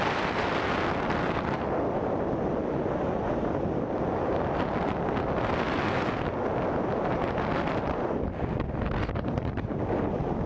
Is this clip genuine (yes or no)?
yes